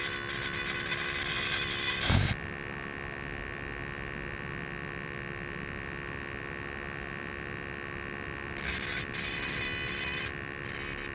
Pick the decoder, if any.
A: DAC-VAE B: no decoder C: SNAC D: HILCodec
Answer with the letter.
B